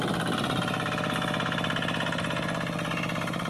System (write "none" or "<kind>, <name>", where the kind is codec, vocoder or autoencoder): none